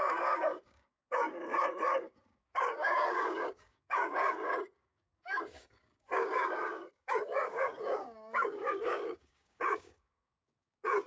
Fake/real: fake